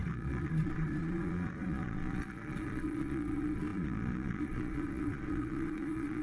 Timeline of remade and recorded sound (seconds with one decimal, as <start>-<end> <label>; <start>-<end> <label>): 0.0-6.2 remade